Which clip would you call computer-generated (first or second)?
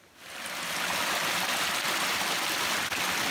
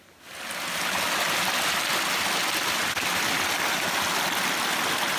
first